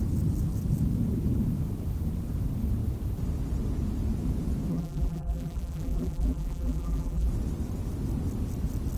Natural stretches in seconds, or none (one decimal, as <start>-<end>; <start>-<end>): 0.0-4.7; 7.3-9.0